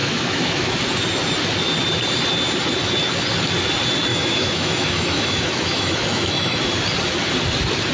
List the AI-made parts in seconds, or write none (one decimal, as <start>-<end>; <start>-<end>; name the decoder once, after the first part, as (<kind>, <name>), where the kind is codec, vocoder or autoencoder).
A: 0.0-0.7 (autoencoder, DAC-VAE); 4.1-6.6